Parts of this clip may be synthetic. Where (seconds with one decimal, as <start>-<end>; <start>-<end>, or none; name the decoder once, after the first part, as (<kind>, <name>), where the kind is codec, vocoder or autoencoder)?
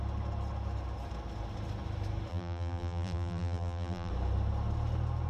2.3-4.1 (vocoder, BigVGAN v2)